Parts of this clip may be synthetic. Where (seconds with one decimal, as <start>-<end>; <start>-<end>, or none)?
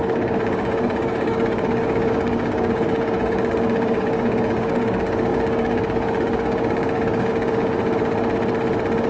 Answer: 0.0-7.8